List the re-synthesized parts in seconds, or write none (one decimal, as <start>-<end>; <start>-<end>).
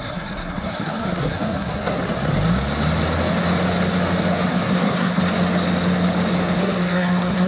0.0-2.0; 4.5-5.2; 6.6-7.5